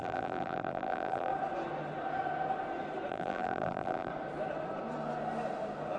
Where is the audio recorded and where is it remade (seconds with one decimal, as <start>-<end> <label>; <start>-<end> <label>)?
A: 0.0-1.3 remade; 1.3-3.1 recorded; 3.1-4.1 remade; 4.1-6.0 recorded